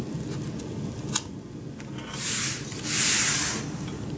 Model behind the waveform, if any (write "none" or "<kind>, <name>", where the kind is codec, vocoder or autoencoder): none